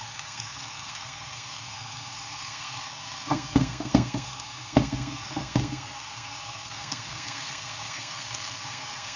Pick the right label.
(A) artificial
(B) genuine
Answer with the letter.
A